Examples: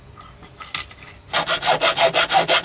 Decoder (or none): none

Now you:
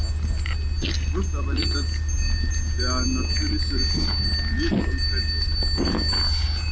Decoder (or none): none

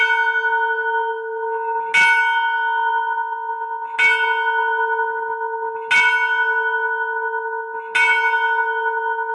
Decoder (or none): none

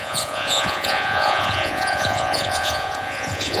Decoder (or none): vocoder, Vocos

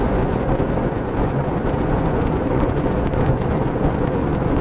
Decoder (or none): vocoder, Vocos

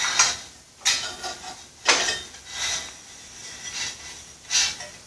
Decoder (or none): none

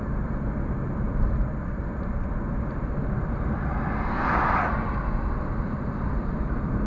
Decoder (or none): none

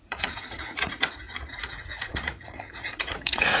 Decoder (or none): vocoder, Vocos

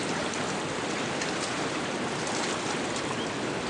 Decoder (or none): none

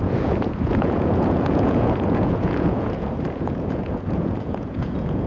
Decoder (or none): vocoder, Vocos